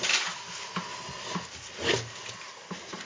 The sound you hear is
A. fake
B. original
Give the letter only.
B